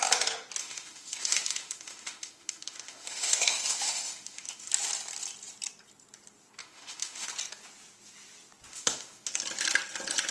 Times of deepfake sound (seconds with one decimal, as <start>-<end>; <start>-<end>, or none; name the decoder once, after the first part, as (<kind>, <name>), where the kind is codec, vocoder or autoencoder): 0.6-4.7 (autoencoder, DAC-VAE); 6.6-7.3; 8.7-9.3